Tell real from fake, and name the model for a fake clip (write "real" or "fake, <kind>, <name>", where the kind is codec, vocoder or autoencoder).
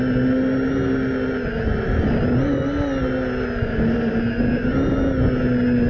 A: real